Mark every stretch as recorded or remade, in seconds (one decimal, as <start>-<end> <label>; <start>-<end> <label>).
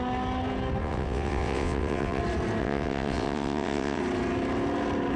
0.0-0.8 recorded; 0.8-2.2 remade; 2.2-2.6 recorded; 2.6-4.0 remade; 4.0-5.2 recorded